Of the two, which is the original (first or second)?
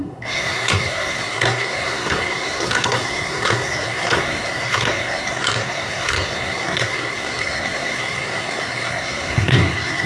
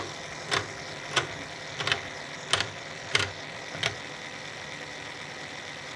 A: second